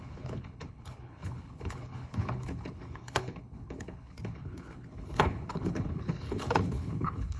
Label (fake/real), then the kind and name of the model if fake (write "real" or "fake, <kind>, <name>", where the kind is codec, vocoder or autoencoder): fake, codec, HILCodec